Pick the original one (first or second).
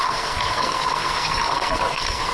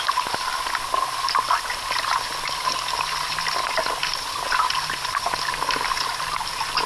second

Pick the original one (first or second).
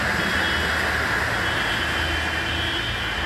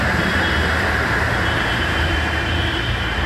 first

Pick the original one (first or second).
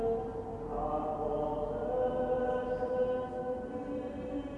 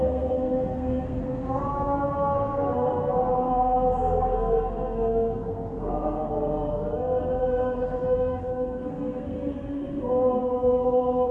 first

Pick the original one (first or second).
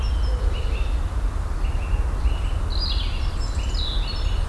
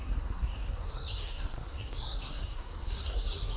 first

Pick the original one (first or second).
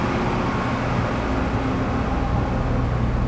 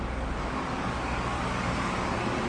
first